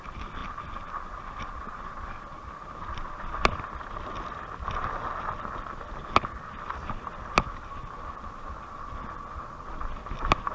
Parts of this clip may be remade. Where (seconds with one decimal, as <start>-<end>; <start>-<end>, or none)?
none